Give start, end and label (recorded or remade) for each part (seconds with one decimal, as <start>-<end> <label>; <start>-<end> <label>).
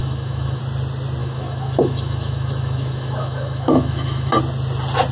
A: 0.0-0.6 remade; 0.6-1.2 recorded; 1.2-4.3 remade; 4.3-5.1 recorded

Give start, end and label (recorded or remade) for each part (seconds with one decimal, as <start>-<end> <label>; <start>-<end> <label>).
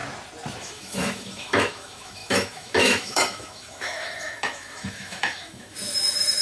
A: 0.0-0.6 recorded; 0.6-6.4 remade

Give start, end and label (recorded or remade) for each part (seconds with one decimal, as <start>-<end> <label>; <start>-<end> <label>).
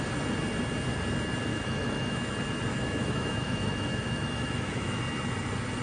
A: 0.0-1.5 recorded; 1.5-2.3 remade; 2.3-2.7 recorded; 2.7-5.0 remade; 5.0-5.8 recorded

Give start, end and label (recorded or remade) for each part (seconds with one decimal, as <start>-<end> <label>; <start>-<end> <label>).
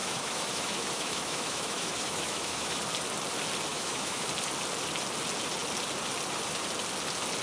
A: 0.0-2.8 remade; 2.8-3.7 recorded; 3.7-4.3 remade; 4.3-7.4 recorded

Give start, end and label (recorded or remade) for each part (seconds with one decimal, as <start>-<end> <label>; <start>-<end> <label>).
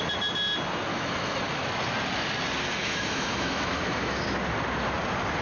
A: 0.0-0.9 recorded; 0.9-1.4 remade; 1.4-2.8 recorded; 2.8-4.2 remade; 4.2-5.4 recorded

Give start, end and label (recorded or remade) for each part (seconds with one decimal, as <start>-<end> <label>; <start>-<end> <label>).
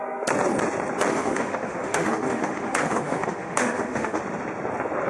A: 0.0-1.1 recorded; 1.1-4.2 remade; 4.2-5.1 recorded